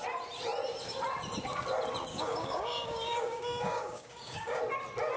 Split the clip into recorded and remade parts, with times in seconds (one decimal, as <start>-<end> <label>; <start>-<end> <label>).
0.0-2.1 recorded; 2.1-4.6 remade; 4.6-5.2 recorded